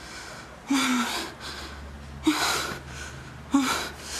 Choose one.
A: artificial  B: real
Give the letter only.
B